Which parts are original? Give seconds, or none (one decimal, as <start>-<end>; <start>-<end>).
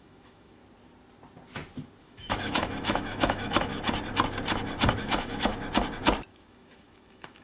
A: 0.6-2.0; 3.7-5.0; 5.5-6.3